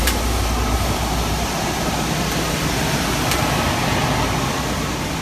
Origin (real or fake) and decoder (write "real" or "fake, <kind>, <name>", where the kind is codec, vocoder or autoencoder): real